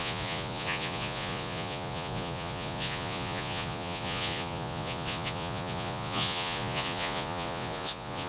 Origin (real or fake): fake